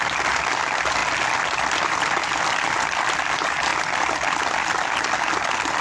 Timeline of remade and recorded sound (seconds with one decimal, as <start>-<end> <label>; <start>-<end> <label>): 0.0-5.8 recorded